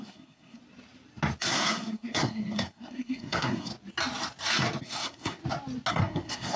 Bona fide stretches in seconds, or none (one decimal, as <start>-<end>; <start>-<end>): 0.6-1.4; 3.7-4.8; 5.4-5.9